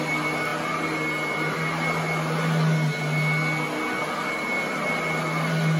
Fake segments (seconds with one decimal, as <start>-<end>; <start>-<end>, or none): none